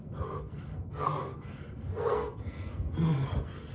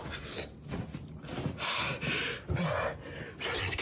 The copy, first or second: first